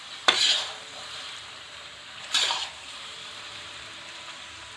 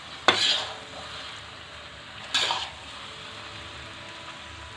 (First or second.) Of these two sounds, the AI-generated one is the first